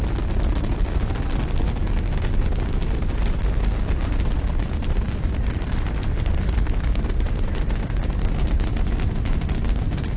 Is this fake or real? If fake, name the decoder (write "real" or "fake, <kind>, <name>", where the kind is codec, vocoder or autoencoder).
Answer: real